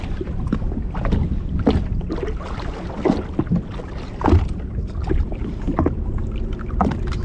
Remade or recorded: recorded